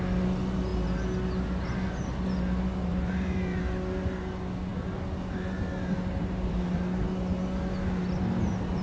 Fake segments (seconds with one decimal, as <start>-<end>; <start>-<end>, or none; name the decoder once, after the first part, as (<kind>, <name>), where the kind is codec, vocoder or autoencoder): 2.9-3.6 (vocoder, BigVGAN v2)